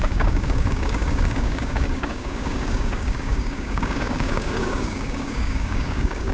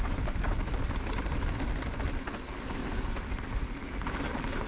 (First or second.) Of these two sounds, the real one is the second